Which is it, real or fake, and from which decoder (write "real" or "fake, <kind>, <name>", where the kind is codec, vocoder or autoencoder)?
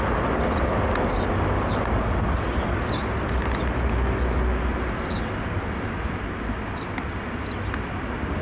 real